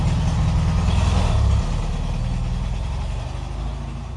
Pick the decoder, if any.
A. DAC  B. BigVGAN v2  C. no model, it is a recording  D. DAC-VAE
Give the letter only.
C